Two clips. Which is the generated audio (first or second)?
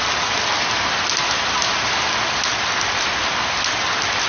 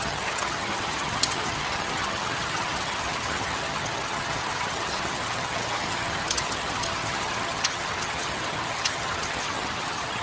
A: second